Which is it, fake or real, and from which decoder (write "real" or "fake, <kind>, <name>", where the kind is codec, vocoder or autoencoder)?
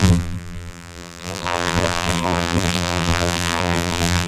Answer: fake, vocoder, BigVGAN v2